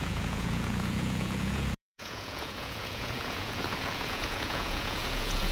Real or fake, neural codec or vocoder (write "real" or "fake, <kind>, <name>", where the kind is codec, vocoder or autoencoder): fake, vocoder, Vocos